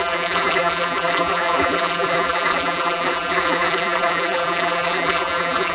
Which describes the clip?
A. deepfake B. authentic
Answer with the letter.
A